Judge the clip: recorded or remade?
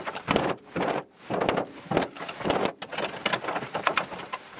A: remade